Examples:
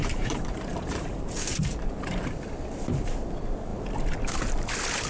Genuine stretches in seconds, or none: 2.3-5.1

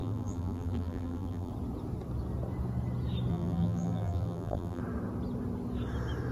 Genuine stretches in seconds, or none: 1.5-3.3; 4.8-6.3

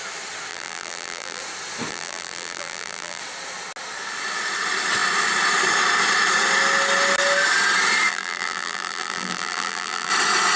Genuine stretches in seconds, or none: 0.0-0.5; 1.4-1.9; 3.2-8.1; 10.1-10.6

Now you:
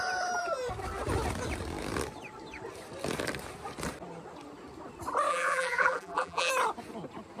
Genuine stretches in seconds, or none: 0.0-5.3; 6.5-7.4

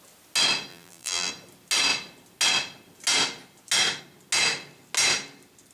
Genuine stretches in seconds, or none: 0.0-0.7; 1.3-5.7

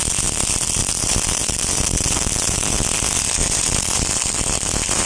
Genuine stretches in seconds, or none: 0.0-0.8; 2.7-3.4